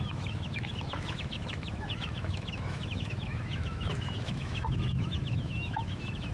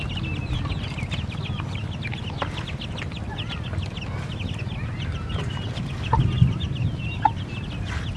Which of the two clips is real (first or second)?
second